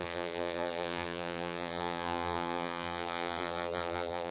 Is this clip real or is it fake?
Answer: fake